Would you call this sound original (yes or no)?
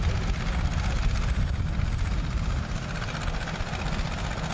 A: yes